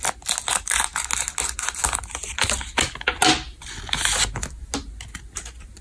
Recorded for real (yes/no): yes